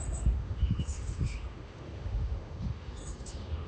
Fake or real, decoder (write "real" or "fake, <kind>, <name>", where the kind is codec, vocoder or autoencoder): fake, autoencoder, DAC-VAE